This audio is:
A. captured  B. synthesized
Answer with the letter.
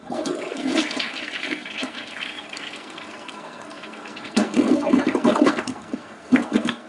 B